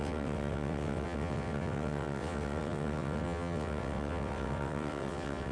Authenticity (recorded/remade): remade